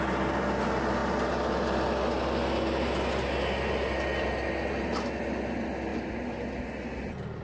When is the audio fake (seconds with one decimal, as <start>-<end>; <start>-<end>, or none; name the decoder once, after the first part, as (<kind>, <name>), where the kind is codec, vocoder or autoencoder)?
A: none